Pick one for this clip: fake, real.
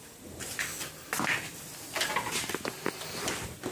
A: real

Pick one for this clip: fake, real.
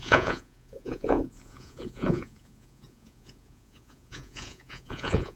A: fake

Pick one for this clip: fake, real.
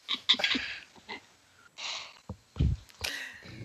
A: real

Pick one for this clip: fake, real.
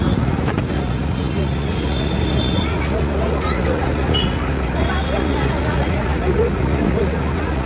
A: fake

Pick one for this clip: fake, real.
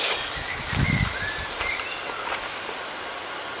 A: real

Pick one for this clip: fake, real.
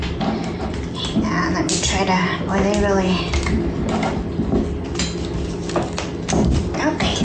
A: real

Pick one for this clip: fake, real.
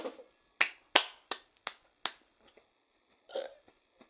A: real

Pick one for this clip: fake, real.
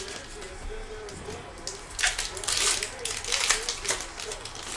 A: real